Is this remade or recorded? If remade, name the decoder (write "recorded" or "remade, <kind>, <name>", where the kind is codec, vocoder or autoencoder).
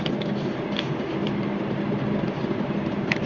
recorded